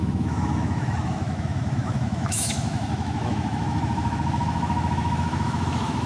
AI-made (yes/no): yes